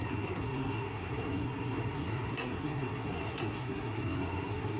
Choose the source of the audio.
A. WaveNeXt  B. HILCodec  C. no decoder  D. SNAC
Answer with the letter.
D